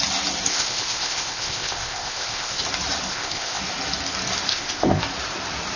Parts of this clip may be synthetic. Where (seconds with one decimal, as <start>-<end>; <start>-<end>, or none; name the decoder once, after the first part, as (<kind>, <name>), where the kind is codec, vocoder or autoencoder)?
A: 0.5-2.6 (codec, ZipCodec); 3.1-3.6; 4.5-5.0